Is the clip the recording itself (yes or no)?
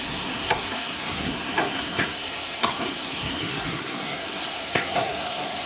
no